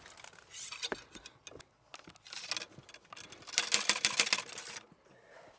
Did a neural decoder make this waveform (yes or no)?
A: no